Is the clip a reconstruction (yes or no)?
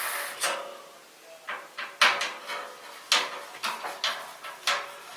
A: no